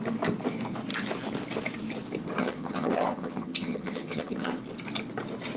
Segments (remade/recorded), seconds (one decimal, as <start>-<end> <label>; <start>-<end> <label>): 0.0-2.4 recorded; 2.4-4.6 remade; 4.6-5.6 recorded